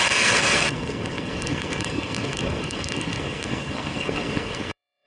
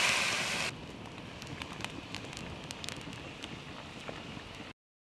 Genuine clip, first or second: second